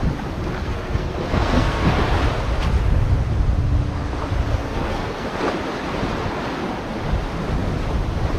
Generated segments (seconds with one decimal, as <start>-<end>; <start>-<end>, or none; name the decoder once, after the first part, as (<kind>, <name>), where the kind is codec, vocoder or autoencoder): 0.6-1.9 (codec, SNAC); 4.5-5.4